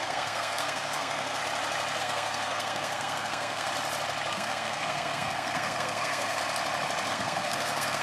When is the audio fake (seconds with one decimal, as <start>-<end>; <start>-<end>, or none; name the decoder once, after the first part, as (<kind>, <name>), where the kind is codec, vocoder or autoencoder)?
0.0-1.4 (codec, SNAC); 2.0-3.7; 4.3-6.4; 7.1-8.0

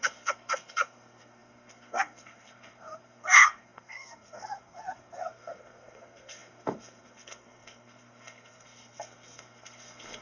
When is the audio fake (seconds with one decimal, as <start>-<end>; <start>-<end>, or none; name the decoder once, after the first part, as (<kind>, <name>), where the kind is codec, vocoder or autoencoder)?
0.0-10.2 (codec, SNAC)

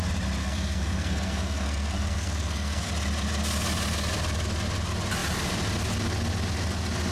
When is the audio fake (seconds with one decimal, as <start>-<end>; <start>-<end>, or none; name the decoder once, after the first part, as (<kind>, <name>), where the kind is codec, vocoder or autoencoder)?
0.4-2.9 (codec, SNAC)